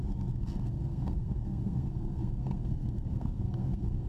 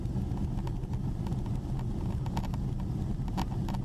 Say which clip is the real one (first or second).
second